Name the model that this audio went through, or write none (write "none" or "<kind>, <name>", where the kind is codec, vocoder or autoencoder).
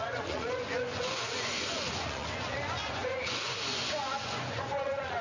vocoder, Vocos